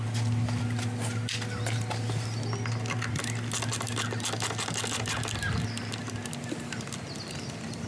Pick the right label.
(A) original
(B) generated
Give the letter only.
A